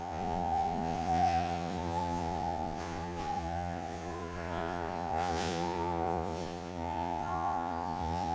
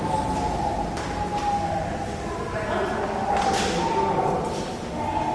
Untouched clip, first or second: second